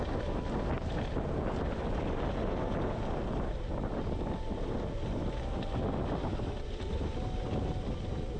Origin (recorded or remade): recorded